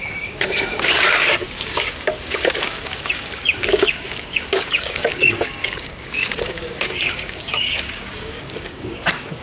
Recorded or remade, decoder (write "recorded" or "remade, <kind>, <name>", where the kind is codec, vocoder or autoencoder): remade, codec, DAC